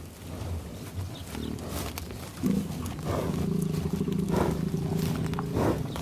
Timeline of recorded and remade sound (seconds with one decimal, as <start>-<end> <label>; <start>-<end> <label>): 0.0-6.0 recorded